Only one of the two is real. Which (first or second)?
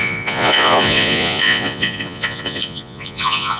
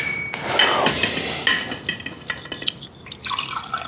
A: second